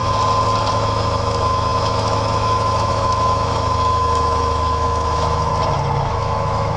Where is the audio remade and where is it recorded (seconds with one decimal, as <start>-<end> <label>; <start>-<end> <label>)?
0.0-0.7 recorded; 0.7-5.5 remade; 5.5-6.1 recorded; 6.1-6.8 remade

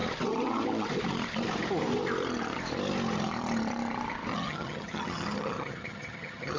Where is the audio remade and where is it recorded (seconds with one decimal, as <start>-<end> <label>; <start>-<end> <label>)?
0.0-4.3 recorded; 4.3-6.6 remade

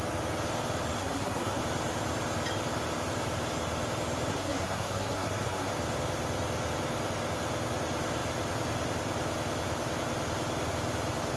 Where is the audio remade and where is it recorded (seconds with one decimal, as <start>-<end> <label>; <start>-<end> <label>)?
0.0-1.0 recorded; 1.0-1.6 remade; 1.6-4.3 recorded; 4.3-5.7 remade; 5.7-11.4 recorded

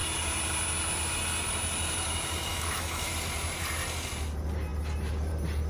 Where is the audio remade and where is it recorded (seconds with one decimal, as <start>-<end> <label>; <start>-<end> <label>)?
0.0-2.5 recorded; 2.5-3.1 remade; 3.1-5.7 recorded

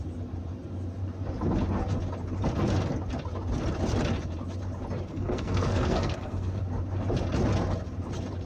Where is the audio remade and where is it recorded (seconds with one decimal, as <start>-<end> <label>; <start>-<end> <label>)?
0.0-5.1 recorded; 5.1-6.6 remade; 6.6-8.5 recorded

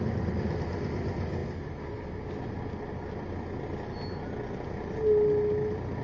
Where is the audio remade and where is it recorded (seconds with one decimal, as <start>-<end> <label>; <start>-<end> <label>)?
0.0-6.0 recorded

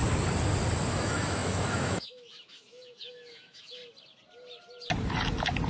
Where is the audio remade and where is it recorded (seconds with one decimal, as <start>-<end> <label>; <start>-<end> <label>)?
0.0-0.9 recorded; 0.9-3.8 remade; 3.8-5.7 recorded